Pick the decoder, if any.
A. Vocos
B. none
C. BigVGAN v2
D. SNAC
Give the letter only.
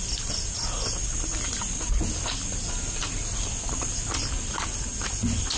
B